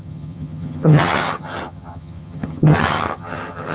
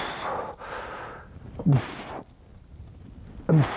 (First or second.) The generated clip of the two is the first